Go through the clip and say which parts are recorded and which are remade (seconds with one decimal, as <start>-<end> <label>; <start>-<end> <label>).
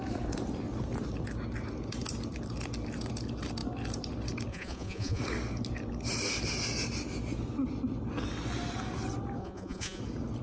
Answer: 0.0-4.5 recorded; 4.5-5.2 remade; 5.2-9.4 recorded; 9.4-10.0 remade; 10.0-10.4 recorded